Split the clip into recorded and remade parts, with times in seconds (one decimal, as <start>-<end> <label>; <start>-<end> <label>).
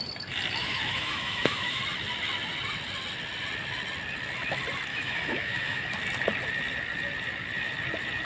0.0-0.6 recorded; 0.6-1.8 remade; 1.8-4.9 recorded; 4.9-5.9 remade; 5.9-8.2 recorded